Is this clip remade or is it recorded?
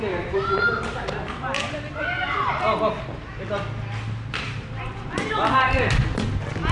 recorded